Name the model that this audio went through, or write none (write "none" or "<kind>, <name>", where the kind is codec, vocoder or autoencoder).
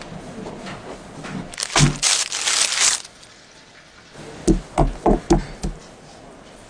none